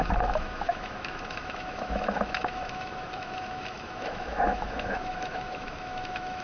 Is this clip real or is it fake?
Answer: fake